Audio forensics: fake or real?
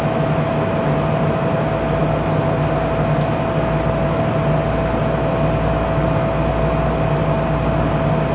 real